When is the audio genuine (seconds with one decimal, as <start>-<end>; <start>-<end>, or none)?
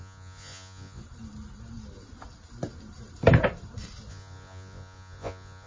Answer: 1.0-4.1